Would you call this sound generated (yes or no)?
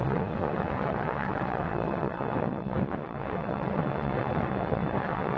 yes